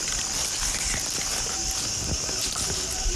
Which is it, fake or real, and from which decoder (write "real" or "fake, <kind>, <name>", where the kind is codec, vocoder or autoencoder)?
real